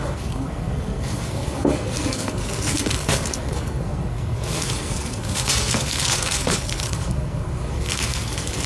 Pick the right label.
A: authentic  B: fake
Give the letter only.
B